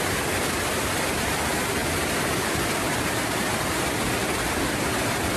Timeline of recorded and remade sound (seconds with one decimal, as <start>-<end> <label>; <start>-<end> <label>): 0.0-5.4 recorded